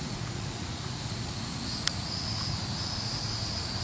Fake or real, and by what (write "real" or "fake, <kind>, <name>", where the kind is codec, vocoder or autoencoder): fake, vocoder, Vocos